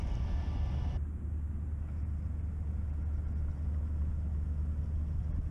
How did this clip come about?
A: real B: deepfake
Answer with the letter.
A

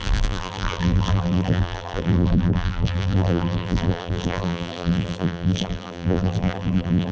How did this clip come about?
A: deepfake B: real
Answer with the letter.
A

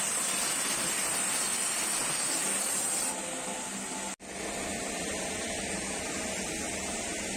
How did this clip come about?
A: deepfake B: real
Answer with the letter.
B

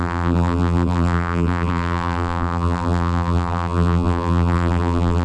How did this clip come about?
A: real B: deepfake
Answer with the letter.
B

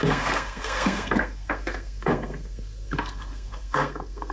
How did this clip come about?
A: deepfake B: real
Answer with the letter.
A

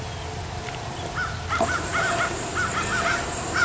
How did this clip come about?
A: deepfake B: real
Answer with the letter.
B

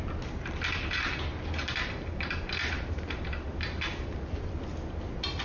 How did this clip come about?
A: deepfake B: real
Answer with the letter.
B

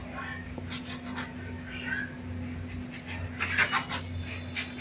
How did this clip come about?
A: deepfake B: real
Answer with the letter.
B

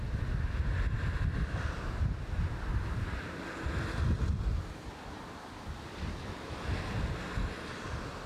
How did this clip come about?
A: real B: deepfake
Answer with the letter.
A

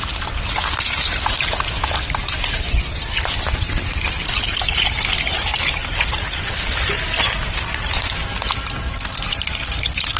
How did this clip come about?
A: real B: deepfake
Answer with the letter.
A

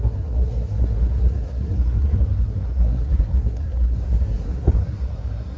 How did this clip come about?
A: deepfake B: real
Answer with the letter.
A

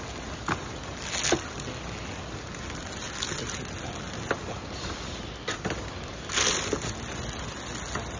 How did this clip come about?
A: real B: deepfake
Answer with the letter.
A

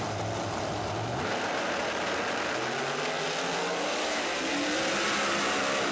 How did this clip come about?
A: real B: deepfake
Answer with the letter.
A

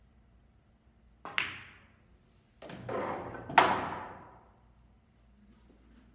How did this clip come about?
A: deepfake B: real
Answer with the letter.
B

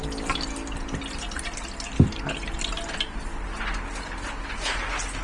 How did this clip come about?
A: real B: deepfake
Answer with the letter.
A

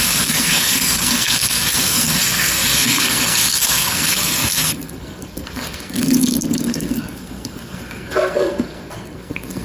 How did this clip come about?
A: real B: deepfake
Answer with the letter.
B